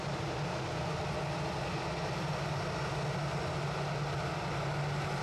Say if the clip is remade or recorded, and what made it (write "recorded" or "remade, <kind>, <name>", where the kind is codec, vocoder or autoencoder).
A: recorded